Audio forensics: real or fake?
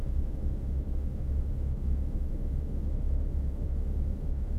fake